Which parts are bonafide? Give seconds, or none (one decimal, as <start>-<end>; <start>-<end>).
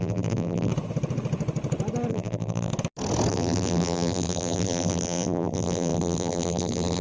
0.7-2.1; 2.7-3.3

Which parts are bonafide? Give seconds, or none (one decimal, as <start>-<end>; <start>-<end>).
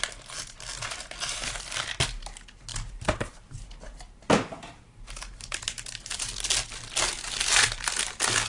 0.0-2.7; 6.2-8.5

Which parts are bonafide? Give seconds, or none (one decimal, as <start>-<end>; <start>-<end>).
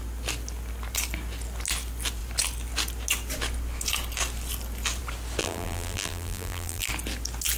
0.0-5.4; 6.9-7.6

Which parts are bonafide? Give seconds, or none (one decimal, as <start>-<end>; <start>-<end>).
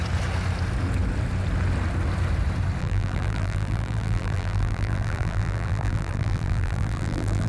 0.0-2.8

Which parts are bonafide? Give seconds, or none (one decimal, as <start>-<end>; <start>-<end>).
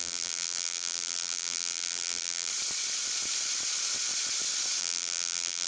2.5-4.8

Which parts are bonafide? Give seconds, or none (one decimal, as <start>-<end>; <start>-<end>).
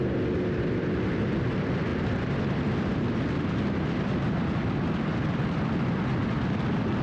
0.0-7.0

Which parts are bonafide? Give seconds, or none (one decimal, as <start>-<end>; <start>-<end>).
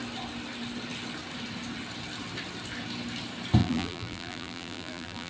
0.0-3.6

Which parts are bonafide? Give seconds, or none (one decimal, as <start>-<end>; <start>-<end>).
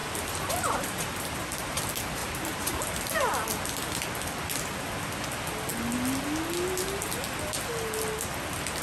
1.8-2.2; 3.3-8.8